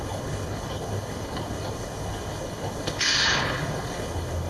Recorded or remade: remade